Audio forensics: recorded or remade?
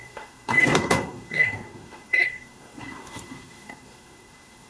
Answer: remade